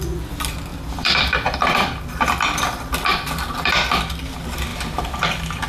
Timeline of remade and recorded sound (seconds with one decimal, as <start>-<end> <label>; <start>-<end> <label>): 0.0-0.7 recorded; 0.7-2.0 remade; 2.0-3.1 recorded; 3.1-4.0 remade; 4.0-4.7 recorded; 4.7-5.7 remade